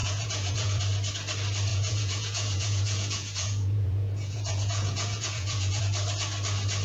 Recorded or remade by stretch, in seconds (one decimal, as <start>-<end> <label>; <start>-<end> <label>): 0.0-0.8 remade; 0.8-1.7 recorded; 1.7-5.8 remade; 5.8-6.8 recorded